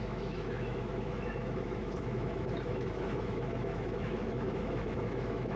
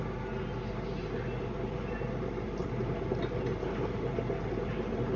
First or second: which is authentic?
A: second